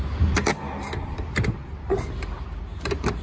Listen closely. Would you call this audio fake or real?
real